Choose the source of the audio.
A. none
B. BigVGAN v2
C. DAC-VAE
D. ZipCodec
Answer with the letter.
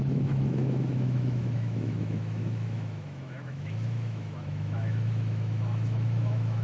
C